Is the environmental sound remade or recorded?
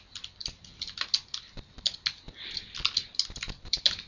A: recorded